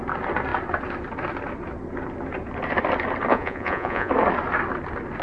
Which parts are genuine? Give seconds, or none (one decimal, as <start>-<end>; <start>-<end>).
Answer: 0.0-3.3; 4.1-5.2